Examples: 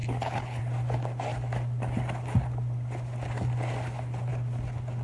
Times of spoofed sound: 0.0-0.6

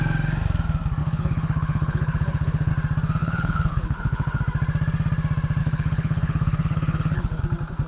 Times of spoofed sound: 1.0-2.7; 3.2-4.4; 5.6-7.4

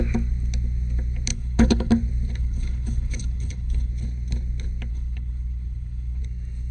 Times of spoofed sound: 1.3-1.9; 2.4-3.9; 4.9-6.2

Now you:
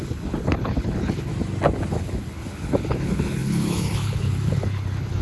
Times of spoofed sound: 0.0-1.3; 1.9-5.2

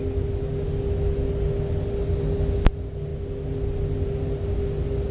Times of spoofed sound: none

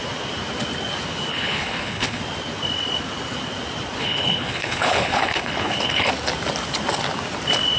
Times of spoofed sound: 1.3-2.2; 4.0-6.1